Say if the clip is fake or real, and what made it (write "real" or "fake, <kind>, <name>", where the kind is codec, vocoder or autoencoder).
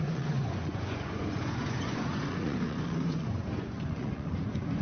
fake, vocoder, Vocos